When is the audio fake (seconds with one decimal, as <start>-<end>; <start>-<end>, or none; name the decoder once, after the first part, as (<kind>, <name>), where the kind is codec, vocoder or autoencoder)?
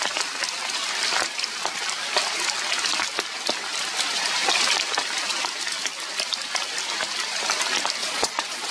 8.0-8.7 (vocoder, Vocos)